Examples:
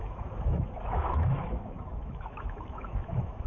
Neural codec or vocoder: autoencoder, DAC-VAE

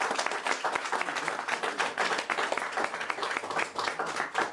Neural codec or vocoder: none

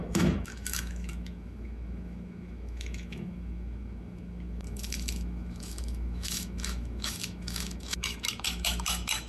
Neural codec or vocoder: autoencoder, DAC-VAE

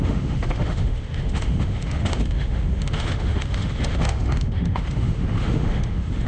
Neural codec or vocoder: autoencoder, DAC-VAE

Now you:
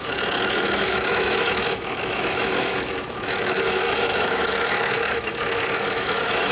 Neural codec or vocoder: autoencoder, DAC-VAE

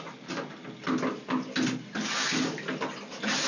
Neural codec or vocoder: none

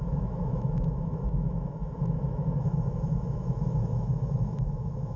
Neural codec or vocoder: autoencoder, DAC-VAE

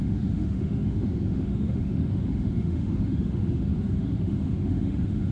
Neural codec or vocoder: autoencoder, DAC-VAE